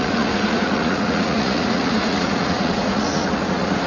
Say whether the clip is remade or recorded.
remade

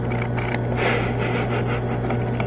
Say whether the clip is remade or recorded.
recorded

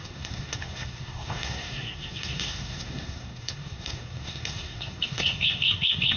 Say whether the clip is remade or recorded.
remade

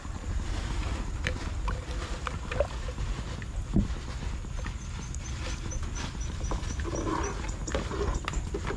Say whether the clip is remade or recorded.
recorded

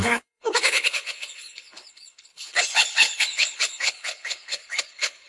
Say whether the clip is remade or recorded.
remade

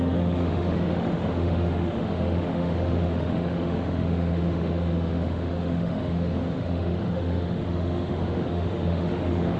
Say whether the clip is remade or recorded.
remade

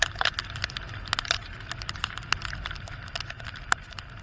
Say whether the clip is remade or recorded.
recorded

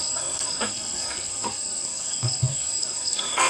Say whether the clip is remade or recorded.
remade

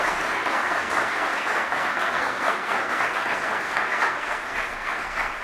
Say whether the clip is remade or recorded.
remade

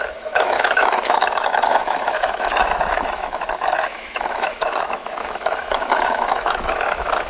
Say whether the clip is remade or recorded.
remade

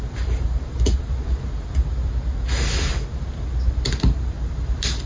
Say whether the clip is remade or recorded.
recorded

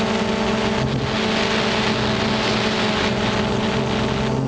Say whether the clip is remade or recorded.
recorded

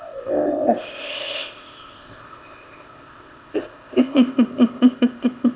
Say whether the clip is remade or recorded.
remade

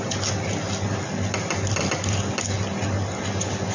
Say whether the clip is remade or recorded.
recorded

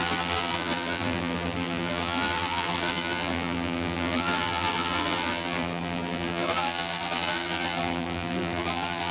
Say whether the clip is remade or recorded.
remade